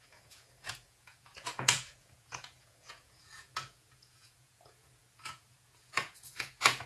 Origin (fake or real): fake